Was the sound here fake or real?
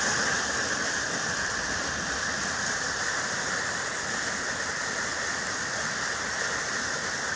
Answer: real